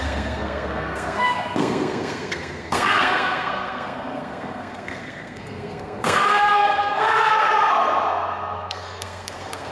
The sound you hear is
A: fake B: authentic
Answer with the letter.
A